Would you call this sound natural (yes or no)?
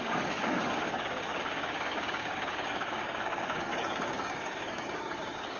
no